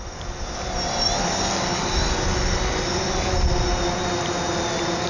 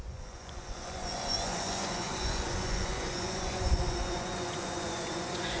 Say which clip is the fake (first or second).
second